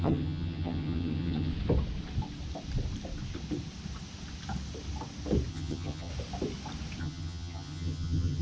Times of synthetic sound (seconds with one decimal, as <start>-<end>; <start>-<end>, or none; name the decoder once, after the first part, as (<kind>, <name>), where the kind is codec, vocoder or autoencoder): 0.0-1.5 (vocoder, HiFi-GAN); 5.5-6.1; 7.0-8.4